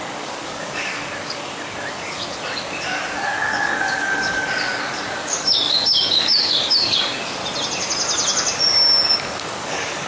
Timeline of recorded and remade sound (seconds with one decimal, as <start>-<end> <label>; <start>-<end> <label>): 0.0-7.4 remade; 7.4-9.2 recorded; 9.2-10.1 remade

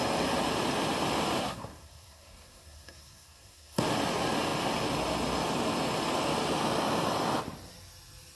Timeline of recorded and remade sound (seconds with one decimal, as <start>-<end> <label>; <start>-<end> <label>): 0.0-1.4 recorded; 1.4-3.8 remade; 3.8-8.4 recorded